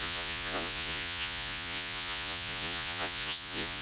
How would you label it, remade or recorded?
remade